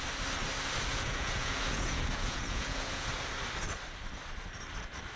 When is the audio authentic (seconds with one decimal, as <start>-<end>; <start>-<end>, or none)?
0.0-0.9; 3.1-5.2